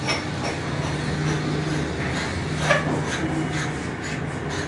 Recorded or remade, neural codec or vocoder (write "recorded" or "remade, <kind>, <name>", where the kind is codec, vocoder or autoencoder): recorded